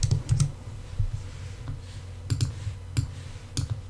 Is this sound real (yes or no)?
yes